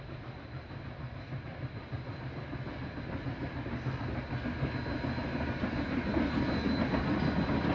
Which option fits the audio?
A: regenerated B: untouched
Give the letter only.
B